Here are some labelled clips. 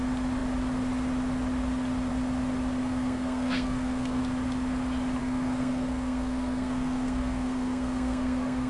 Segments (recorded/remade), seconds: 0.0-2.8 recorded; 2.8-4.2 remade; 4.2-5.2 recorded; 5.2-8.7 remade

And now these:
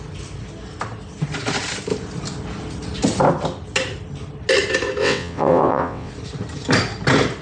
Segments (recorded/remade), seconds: 0.0-5.0 recorded; 5.0-6.1 remade; 6.1-7.4 recorded

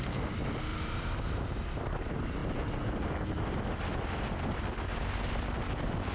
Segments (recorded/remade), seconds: 0.0-0.7 recorded; 0.7-1.4 remade; 1.4-6.1 recorded

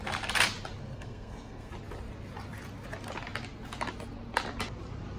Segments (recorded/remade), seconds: 0.0-0.8 recorded; 0.8-1.7 remade; 1.7-5.2 recorded